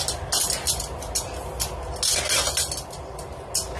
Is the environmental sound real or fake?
real